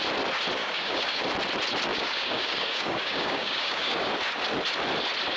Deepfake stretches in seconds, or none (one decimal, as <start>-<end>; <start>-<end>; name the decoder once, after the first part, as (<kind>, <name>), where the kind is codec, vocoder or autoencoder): 0.6-1.2 (codec, DAC); 1.9-4.1